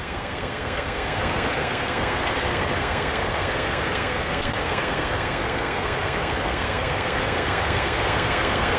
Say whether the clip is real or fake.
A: fake